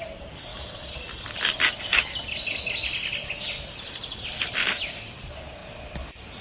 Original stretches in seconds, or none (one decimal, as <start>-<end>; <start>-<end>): 0.5-4.2; 5.6-6.4